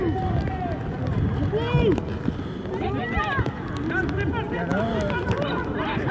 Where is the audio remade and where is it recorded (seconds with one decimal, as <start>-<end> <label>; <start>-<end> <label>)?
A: 0.0-4.7 recorded; 4.7-6.1 remade